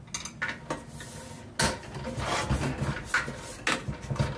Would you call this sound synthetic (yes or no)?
no